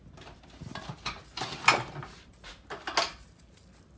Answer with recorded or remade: recorded